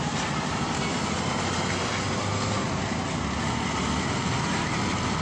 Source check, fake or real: real